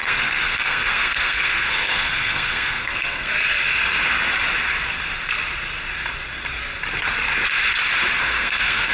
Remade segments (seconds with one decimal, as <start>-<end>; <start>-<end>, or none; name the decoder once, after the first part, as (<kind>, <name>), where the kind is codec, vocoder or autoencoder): 0.0-3.3 (codec, SNAC); 8.2-8.9